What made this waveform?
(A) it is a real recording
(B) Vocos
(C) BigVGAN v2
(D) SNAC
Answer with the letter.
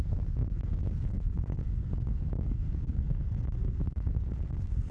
D